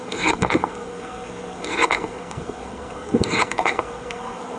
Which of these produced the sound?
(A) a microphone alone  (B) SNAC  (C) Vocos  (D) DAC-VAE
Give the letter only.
B